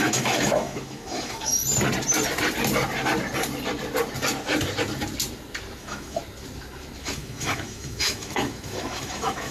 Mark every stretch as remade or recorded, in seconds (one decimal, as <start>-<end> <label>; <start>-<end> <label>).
0.0-1.5 remade; 1.5-5.8 recorded; 5.8-6.2 remade; 6.2-7.0 recorded; 7.0-9.5 remade